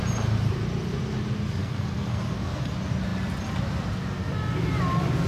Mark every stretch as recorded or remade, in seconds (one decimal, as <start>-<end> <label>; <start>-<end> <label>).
0.0-1.6 recorded; 1.6-2.7 remade; 2.7-5.3 recorded